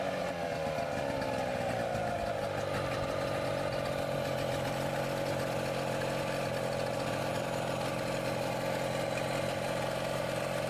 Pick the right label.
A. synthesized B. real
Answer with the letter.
B